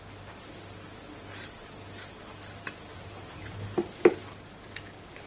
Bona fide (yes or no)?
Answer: yes